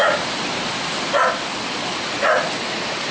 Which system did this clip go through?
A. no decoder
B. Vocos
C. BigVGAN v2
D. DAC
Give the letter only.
A